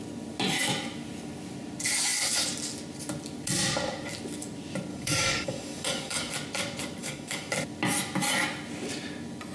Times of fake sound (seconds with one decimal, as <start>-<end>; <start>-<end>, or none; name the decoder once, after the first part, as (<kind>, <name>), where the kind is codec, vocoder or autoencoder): 4.9-6.3 (codec, DAC); 7.0-7.5